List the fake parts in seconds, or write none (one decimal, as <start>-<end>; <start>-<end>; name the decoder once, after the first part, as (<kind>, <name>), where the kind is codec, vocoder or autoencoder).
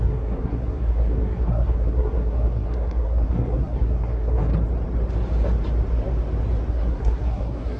0.0-4.5 (codec, SNAC); 6.7-7.8